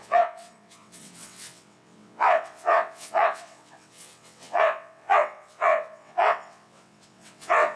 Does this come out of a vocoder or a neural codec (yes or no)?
yes